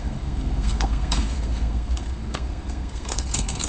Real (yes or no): no